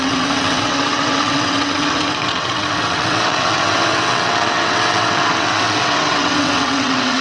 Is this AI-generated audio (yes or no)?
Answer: yes